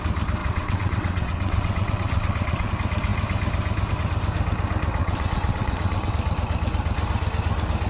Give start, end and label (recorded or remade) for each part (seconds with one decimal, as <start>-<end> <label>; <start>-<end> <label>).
0.0-0.4 recorded; 0.4-2.7 remade; 2.7-5.0 recorded; 5.0-6.1 remade; 6.1-7.9 recorded